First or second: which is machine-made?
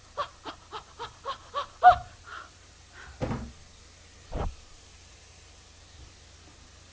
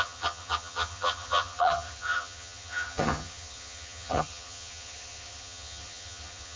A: second